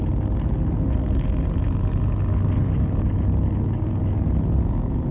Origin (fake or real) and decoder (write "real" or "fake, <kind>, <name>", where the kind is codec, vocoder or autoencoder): real